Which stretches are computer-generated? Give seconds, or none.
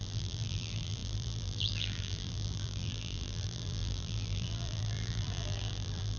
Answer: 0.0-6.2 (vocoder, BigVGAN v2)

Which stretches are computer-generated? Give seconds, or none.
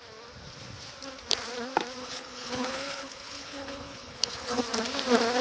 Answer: 2.0-4.6 (codec, HILCodec)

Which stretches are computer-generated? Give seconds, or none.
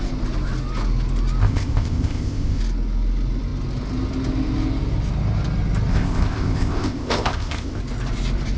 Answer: 1.4-2.6 (codec, ZipCodec); 5.9-7.8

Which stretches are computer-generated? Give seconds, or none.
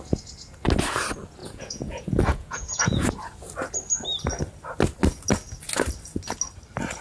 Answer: 1.4-3.1 (vocoder, Vocos)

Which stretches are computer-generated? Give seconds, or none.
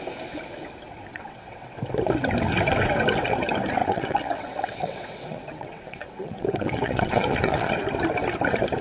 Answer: 1.1-1.8 (vocoder, WaveNeXt); 3.8-7.7